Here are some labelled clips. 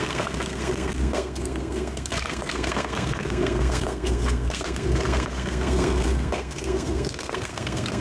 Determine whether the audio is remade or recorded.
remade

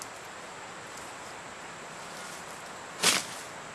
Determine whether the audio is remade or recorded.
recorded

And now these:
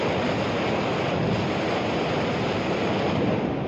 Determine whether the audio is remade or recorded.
recorded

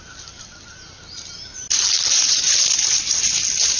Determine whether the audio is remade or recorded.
recorded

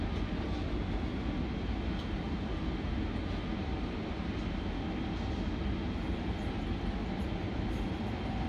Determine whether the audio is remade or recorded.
recorded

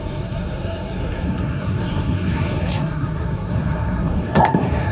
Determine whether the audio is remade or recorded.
remade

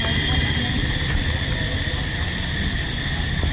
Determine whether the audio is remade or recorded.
recorded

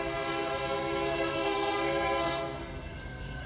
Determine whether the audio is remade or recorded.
remade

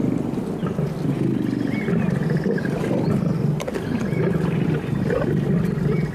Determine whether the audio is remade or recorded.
recorded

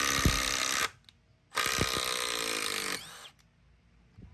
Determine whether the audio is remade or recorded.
recorded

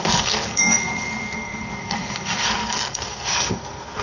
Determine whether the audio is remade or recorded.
remade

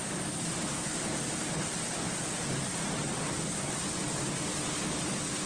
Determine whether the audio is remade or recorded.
recorded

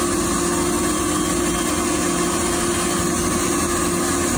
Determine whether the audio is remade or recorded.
recorded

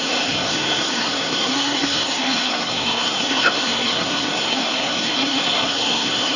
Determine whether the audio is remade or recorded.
remade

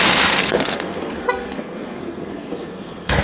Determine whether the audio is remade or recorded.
remade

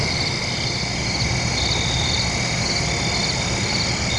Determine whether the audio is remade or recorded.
recorded